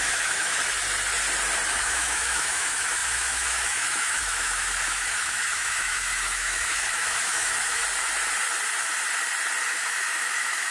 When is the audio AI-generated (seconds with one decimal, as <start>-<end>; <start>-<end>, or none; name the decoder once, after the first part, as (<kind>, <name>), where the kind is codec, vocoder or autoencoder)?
0.0-0.6 (autoencoder, DAC-VAE); 1.7-7.8; 9.7-10.7